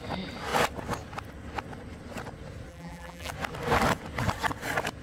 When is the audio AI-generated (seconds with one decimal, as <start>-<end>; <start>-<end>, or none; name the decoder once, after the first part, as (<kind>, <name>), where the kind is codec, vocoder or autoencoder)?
2.7-3.3 (vocoder, BigVGAN v2)